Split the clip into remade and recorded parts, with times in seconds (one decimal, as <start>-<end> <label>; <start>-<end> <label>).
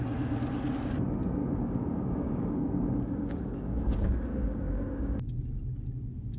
0.0-1.4 recorded; 1.4-5.2 remade; 5.2-6.4 recorded